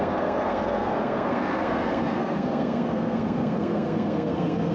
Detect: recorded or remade remade